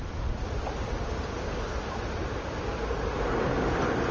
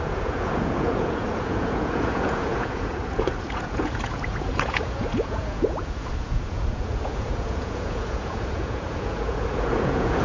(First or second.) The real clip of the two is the first